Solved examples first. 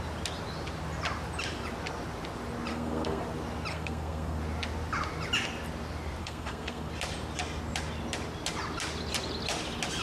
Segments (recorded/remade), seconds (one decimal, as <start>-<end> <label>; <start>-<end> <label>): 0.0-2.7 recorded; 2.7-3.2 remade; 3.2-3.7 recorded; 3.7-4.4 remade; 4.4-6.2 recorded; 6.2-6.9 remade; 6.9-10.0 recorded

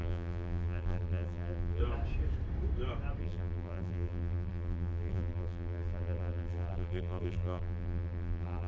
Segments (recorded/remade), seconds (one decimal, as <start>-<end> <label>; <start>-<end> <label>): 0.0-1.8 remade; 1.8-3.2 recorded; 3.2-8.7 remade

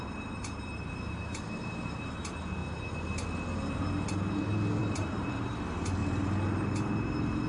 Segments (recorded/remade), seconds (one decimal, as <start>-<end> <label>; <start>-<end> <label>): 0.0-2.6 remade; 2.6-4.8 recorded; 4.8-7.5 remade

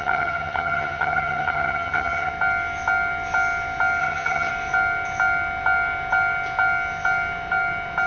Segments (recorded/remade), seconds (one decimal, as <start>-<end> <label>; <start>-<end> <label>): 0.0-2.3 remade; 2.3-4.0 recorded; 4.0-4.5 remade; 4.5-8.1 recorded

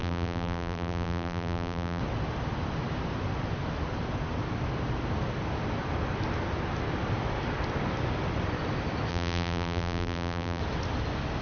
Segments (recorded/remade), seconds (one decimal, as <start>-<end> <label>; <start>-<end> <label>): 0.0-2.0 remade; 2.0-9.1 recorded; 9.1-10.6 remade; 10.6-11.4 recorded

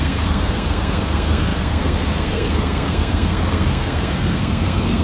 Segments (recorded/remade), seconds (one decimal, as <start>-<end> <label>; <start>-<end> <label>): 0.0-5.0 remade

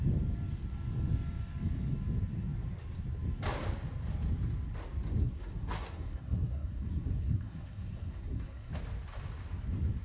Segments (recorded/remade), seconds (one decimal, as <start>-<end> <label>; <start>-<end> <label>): 0.0-5.2 recorded; 5.2-8.7 remade; 8.7-10.0 recorded

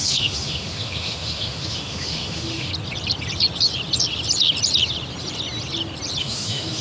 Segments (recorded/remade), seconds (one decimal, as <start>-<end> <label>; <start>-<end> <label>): 0.0-2.7 remade; 2.7-6.2 recorded; 6.2-6.8 remade